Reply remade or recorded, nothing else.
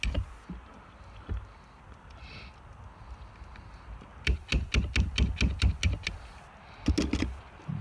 recorded